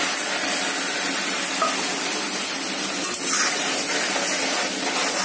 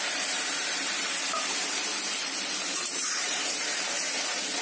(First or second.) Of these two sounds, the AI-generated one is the second